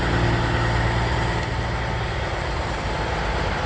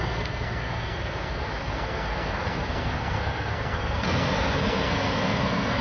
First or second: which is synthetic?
second